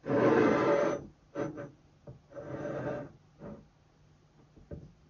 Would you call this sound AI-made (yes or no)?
no